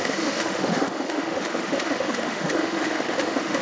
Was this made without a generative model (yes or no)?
no